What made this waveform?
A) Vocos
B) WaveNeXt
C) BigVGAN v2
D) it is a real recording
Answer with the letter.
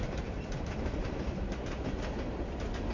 D